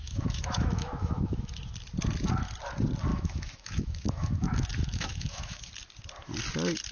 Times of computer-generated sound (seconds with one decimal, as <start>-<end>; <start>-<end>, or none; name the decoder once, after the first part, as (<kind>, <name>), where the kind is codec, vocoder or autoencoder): 0.0-1.5 (autoencoder, DAC-VAE); 3.1-5.7